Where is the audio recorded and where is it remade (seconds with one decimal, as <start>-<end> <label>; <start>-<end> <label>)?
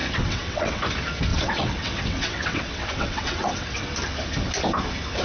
0.0-0.8 remade; 0.8-1.3 recorded; 1.3-3.9 remade; 3.9-5.2 recorded